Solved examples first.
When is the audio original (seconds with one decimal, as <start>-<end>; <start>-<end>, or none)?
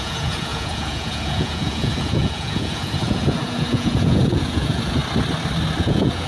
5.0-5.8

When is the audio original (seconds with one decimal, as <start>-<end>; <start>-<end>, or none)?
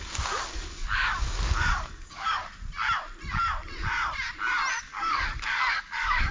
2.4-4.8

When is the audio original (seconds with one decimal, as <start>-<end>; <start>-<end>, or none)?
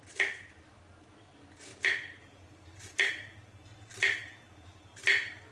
0.0-1.7; 5.0-5.5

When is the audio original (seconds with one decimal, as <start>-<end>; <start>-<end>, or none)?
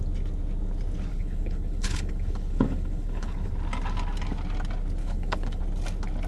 0.0-1.1; 3.5-5.0; 5.6-6.3